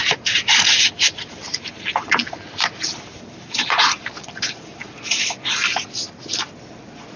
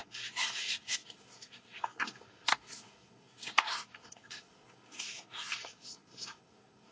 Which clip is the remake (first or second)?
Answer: second